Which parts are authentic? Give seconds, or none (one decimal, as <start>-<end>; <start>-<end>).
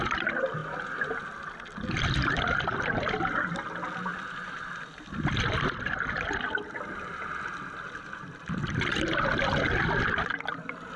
0.0-11.0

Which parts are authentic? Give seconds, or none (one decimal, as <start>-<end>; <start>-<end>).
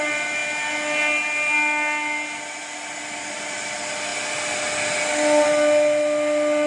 0.0-6.7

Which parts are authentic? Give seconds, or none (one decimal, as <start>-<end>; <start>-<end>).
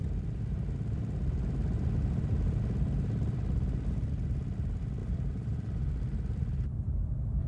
0.0-5.0; 5.9-7.5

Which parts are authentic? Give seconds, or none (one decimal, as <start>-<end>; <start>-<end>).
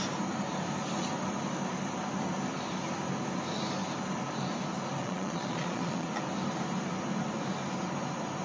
0.0-5.0; 6.1-8.4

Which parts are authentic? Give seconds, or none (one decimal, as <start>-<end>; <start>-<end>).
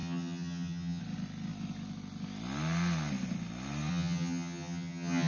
1.0-3.9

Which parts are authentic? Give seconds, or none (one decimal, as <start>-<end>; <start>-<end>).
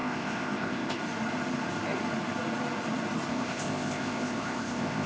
1.0-3.3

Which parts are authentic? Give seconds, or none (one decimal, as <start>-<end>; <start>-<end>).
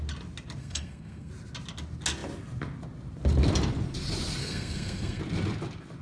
0.0-0.6; 1.3-4.4; 5.2-6.0